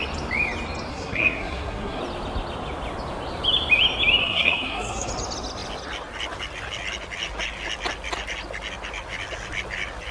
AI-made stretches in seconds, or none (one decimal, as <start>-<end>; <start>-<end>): 0.9-2.0; 4.2-5.1